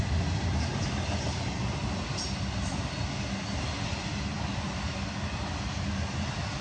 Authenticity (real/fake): real